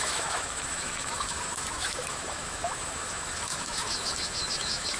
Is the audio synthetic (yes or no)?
yes